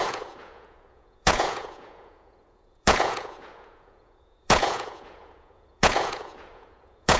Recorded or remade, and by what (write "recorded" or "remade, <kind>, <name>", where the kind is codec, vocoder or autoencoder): remade, vocoder, Vocos